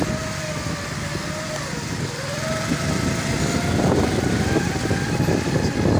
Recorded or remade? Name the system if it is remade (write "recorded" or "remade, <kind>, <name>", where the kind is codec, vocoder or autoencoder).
recorded